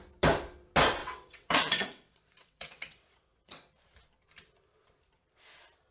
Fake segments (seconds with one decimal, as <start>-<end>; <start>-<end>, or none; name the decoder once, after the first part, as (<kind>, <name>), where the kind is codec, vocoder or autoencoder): 1.0-3.7 (vocoder, WaveNeXt)